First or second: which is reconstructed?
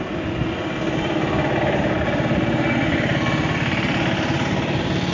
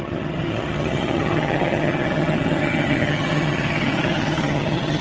second